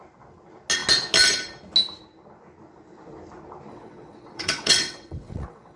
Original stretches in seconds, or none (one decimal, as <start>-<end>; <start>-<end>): 0.0-3.7